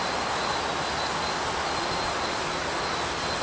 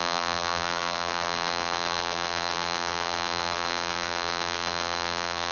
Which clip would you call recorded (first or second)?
first